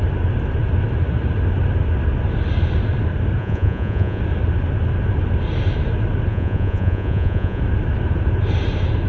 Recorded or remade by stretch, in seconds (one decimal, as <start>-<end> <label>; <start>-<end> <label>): 0.0-3.4 recorded; 3.4-4.2 remade; 4.2-6.3 recorded; 6.3-7.6 remade; 7.6-9.1 recorded